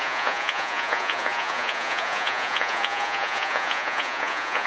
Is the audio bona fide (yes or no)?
no